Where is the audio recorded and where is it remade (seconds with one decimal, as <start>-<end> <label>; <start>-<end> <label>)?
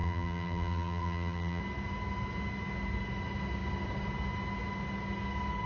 0.0-1.6 remade; 1.6-5.7 recorded